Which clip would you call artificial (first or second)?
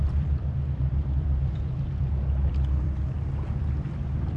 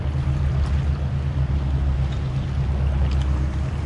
first